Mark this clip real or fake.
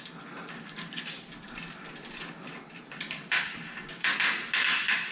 real